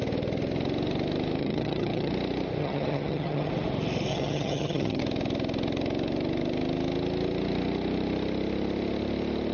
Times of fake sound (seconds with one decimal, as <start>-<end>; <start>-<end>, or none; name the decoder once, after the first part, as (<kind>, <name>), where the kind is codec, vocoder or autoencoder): 1.4-2.1 (vocoder, HiFi-GAN); 2.6-3.5; 4.1-5.0